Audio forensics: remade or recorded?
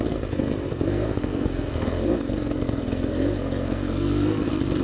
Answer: remade